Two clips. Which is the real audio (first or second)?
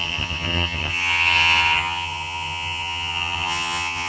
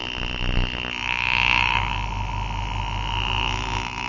second